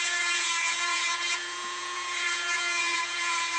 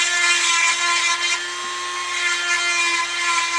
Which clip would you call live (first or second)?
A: second